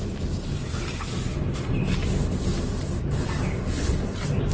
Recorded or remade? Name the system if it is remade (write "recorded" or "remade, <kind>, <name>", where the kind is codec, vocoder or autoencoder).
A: recorded